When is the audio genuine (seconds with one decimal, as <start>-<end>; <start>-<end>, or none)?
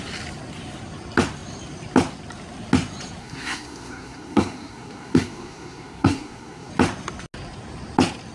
0.0-3.2; 6.7-8.3